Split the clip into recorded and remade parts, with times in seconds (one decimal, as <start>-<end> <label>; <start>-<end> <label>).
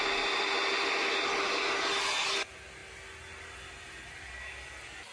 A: 0.0-5.1 recorded